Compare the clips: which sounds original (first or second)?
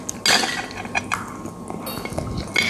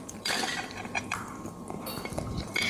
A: first